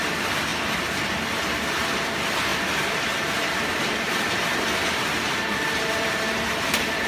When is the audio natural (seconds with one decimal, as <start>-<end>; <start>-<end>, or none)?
0.0-2.5